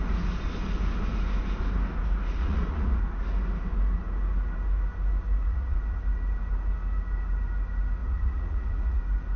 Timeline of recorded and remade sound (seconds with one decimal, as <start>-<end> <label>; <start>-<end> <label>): 0.0-2.4 recorded; 2.4-3.0 remade; 3.0-5.4 recorded; 5.4-6.0 remade; 6.0-8.0 recorded; 8.0-9.0 remade; 9.0-9.4 recorded

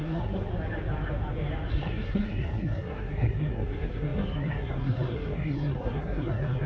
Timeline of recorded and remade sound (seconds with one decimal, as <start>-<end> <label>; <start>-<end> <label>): 0.0-0.5 remade; 0.5-1.7 recorded; 1.7-6.7 remade

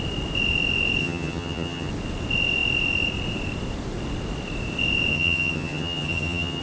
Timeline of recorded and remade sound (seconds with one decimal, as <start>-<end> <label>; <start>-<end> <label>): 0.0-1.0 recorded; 1.0-1.9 remade; 1.9-5.1 recorded; 5.1-6.6 remade

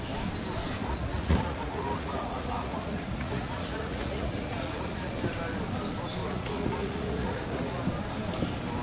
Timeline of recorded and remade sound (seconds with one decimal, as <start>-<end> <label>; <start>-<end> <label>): 0.0-0.8 recorded; 0.8-5.1 remade; 5.1-6.2 recorded; 6.2-7.8 remade; 7.8-8.8 recorded

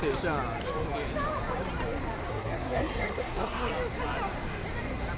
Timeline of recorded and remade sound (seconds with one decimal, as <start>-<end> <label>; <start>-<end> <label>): 0.0-2.3 recorded; 2.3-3.7 remade; 3.7-5.2 recorded